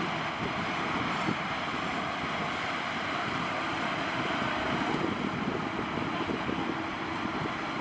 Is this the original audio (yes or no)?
yes